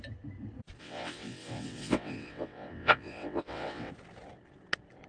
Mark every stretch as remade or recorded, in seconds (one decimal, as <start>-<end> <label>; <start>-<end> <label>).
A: 0.0-0.8 recorded; 0.8-3.9 remade; 3.9-5.1 recorded